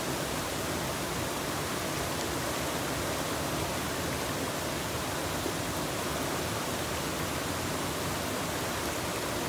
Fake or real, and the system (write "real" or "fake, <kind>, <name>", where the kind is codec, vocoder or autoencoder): real